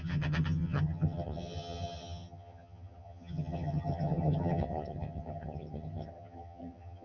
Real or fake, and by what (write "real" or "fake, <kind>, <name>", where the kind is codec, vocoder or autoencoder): fake, vocoder, HiFi-GAN